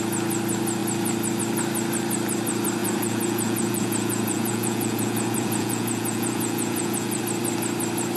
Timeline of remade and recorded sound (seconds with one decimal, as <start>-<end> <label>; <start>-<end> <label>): 0.0-2.8 recorded; 2.8-7.2 remade; 7.2-8.2 recorded